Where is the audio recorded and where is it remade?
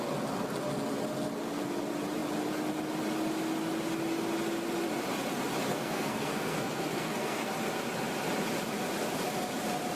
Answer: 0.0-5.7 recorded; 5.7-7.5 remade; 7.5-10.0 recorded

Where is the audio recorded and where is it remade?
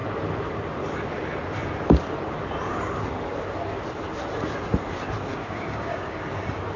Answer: 0.0-5.3 recorded; 5.3-6.2 remade; 6.2-6.8 recorded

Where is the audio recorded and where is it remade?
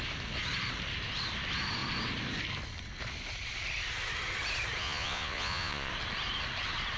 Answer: 0.0-4.8 recorded; 4.8-5.9 remade; 5.9-7.0 recorded